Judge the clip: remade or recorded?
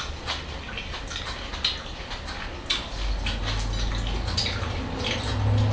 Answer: recorded